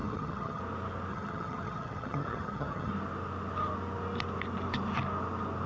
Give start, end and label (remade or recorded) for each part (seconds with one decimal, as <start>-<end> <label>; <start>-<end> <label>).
0.0-0.6 remade; 0.6-1.1 recorded; 1.1-2.9 remade; 2.9-5.7 recorded